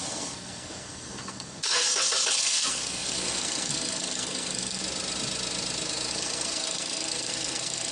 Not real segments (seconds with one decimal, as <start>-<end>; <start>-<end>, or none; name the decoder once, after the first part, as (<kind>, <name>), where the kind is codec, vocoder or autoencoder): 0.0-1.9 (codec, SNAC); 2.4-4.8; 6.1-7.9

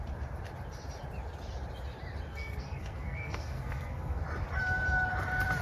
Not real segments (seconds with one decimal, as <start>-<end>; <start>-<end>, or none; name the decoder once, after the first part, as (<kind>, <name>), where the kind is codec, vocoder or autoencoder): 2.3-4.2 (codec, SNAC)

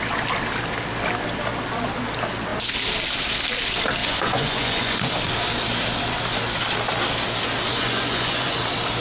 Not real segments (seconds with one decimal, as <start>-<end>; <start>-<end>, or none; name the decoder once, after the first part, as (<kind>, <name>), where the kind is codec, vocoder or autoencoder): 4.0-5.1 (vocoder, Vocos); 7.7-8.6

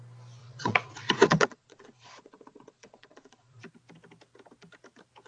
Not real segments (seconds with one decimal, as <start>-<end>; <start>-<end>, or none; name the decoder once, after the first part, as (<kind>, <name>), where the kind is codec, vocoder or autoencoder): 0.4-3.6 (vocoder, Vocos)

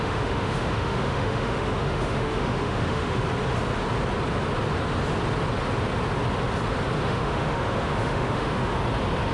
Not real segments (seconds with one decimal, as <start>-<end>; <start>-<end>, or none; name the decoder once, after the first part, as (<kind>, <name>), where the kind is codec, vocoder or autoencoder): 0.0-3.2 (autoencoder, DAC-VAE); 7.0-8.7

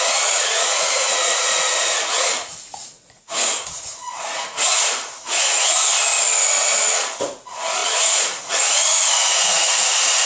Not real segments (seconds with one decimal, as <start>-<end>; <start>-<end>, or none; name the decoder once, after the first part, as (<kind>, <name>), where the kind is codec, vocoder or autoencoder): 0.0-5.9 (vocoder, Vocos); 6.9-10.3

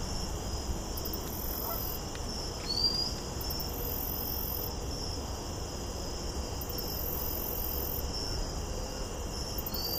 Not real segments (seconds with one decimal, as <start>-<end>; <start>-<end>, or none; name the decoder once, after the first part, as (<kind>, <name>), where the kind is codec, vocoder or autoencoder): none

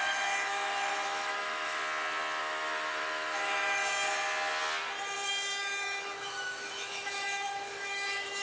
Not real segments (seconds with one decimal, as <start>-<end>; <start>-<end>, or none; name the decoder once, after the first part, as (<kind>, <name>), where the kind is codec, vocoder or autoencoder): 0.0-1.8 (autoencoder, DAC-VAE); 2.4-3.8; 5.6-8.4